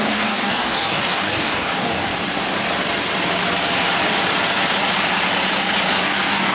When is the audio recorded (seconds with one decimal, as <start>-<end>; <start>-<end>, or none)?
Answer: 2.1-6.0